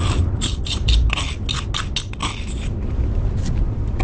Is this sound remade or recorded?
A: recorded